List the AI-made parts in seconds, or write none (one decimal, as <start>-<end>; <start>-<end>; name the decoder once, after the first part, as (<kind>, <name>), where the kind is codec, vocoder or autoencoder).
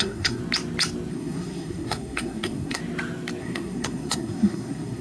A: 0.0-0.4 (codec, SNAC); 1.1-2.8; 3.4-5.0